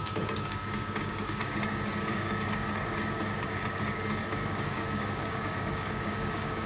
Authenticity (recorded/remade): remade